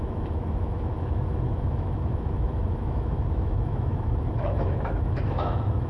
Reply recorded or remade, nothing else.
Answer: remade